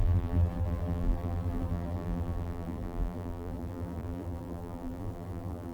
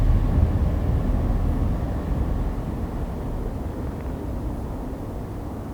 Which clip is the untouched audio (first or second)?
second